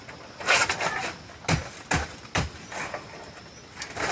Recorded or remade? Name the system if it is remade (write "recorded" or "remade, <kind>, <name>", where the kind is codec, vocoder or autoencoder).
recorded